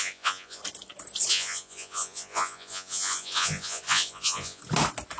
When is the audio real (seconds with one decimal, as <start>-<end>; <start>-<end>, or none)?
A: 0.6-1.3; 4.6-5.2